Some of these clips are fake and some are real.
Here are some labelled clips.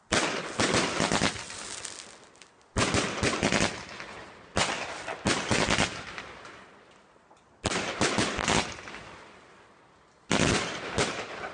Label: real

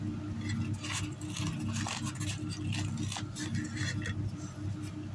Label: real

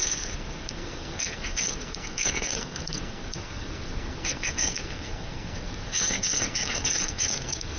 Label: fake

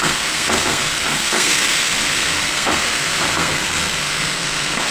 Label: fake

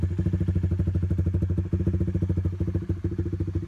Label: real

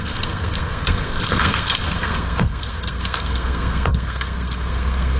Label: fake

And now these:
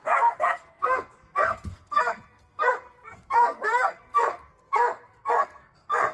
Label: fake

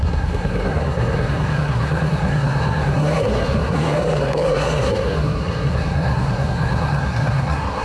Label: fake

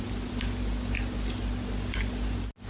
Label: real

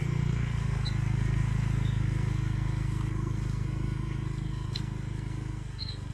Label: fake